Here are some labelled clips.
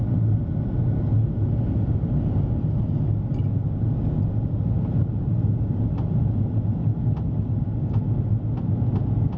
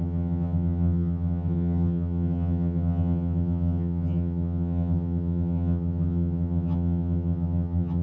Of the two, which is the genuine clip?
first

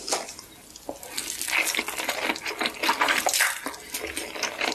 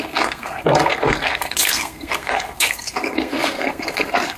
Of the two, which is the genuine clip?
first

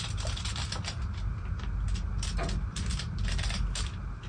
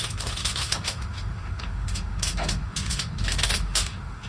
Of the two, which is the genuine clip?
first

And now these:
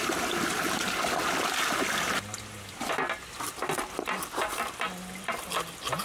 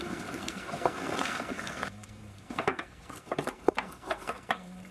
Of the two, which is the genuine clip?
first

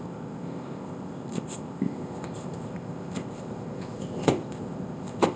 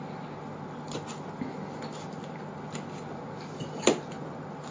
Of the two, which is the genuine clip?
second